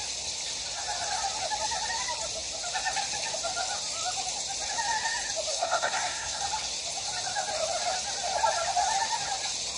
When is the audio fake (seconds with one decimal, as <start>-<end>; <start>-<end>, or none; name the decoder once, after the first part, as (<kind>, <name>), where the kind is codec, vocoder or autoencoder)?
5.5-6.4 (codec, SNAC)